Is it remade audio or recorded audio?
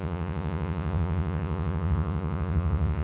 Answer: remade